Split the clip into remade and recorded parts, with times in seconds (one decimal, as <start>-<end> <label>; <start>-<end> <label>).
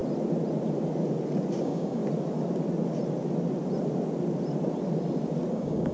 0.0-1.6 recorded; 1.6-2.0 remade; 2.0-5.5 recorded; 5.5-5.9 remade